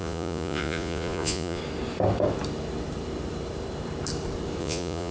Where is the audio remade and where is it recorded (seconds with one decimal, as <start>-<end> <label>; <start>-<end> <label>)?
0.0-1.6 remade; 1.6-4.6 recorded; 4.6-5.1 remade